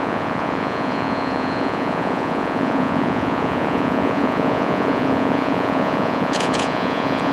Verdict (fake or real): fake